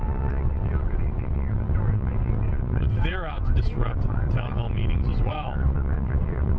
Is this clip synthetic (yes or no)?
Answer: yes